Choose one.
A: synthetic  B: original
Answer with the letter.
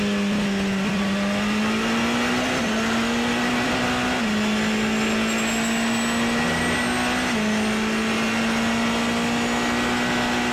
B